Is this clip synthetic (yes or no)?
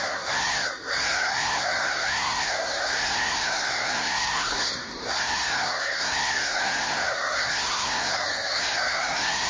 yes